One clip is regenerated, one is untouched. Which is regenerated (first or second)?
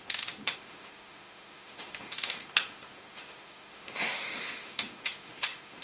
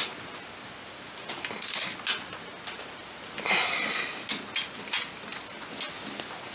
first